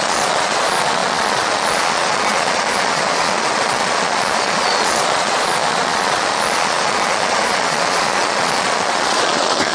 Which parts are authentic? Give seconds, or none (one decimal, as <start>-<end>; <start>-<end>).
none